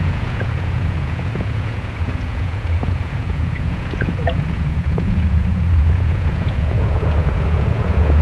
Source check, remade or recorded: remade